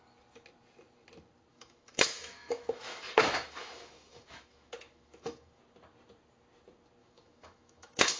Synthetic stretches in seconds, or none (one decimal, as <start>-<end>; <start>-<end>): 1.5-5.6; 7.0-8.2